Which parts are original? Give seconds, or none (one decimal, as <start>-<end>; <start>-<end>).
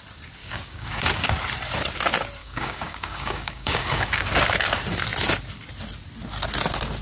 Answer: 0.0-0.4; 1.1-2.4; 4.3-7.0